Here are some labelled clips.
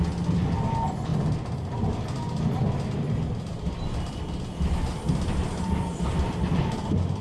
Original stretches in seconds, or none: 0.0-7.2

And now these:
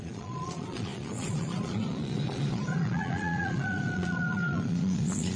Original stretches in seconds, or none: none

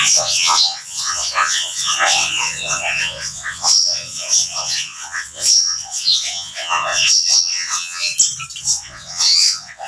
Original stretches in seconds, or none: 8.1-8.6

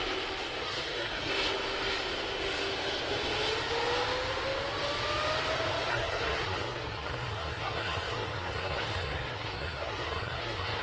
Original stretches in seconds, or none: 0.0-0.6; 1.3-5.9

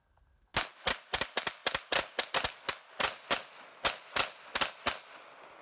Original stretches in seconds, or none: 0.0-5.6

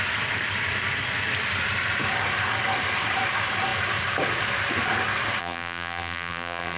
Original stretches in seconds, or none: 0.0-5.4

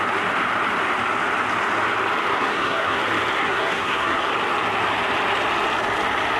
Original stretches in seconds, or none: 0.0-2.3; 3.0-3.4; 4.3-6.4